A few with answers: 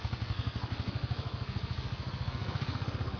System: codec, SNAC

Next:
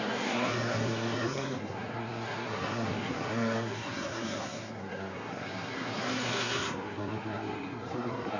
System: codec, SNAC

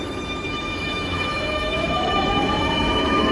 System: autoencoder, DAC-VAE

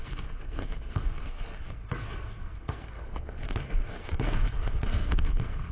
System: codec, SNAC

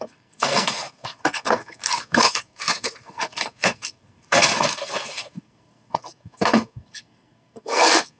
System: codec, SNAC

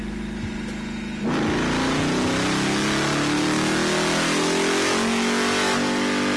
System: none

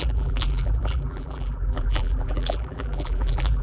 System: vocoder, BigVGAN v2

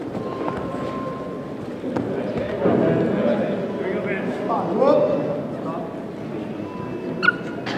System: none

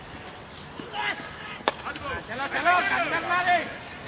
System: none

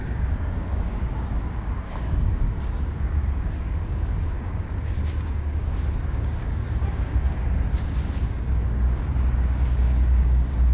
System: codec, DAC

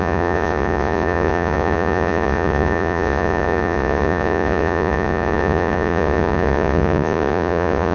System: vocoder, Vocos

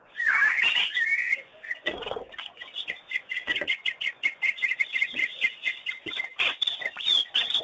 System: vocoder, Vocos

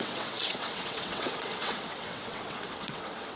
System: vocoder, WaveNeXt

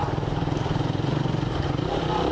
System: vocoder, BigVGAN v2